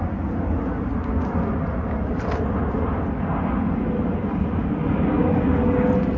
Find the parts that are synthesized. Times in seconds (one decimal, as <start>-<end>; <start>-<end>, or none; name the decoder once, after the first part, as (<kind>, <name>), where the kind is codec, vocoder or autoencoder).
none